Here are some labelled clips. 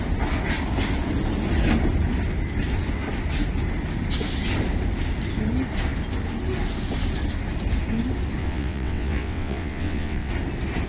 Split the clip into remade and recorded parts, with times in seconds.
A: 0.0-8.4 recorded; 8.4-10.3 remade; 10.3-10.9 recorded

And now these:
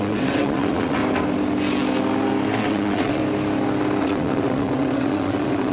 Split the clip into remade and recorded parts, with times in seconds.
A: 0.0-1.0 remade; 1.0-2.6 recorded; 2.6-3.2 remade; 3.2-4.0 recorded; 4.0-5.7 remade

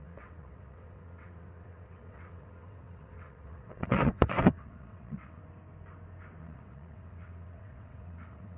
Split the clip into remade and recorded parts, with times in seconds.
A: 0.0-5.4 remade; 5.4-6.4 recorded; 6.4-8.6 remade